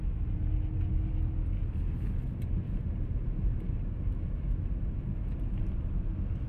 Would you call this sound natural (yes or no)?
yes